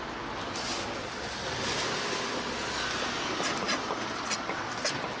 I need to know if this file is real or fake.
real